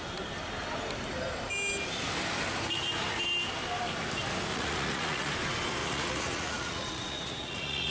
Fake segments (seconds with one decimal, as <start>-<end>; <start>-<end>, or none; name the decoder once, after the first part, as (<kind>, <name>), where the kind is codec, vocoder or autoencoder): 4.5-5.3 (vocoder, Vocos); 5.8-7.9

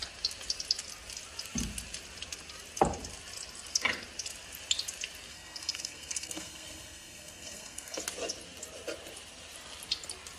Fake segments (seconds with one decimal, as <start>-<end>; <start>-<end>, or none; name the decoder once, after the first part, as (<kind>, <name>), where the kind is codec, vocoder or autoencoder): 5.3-8.0 (codec, SNAC)

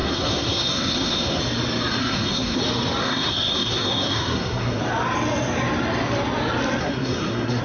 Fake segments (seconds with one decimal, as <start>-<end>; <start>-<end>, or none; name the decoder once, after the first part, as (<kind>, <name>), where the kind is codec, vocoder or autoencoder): 0.0-1.4 (codec, SNAC); 2.0-2.6; 3.0-4.8; 6.8-7.6

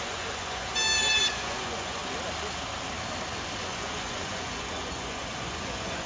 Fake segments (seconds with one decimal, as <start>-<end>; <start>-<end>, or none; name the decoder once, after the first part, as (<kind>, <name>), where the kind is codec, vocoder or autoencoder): 0.0-0.7 (vocoder, Vocos); 1.3-2.0; 3.6-6.1